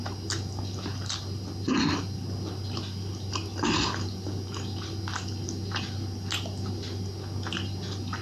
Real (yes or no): yes